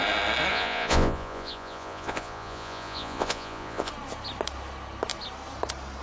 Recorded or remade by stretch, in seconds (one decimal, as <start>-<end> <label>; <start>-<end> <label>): 0.0-0.5 recorded; 0.5-3.9 remade; 3.9-6.0 recorded